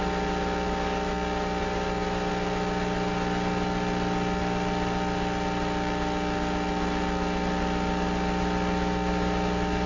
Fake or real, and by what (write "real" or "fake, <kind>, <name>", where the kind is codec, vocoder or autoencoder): real